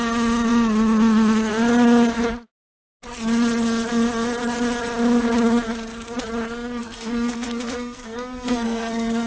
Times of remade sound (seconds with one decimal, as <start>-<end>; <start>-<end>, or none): 6.8-9.3